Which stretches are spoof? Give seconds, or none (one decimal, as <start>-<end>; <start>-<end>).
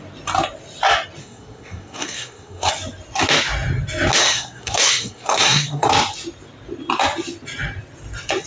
1.2-2.7; 4.2-5.9